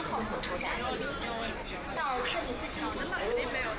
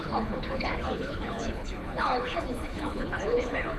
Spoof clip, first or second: second